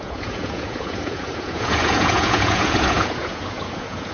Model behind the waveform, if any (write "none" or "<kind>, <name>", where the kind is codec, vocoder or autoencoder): vocoder, Vocos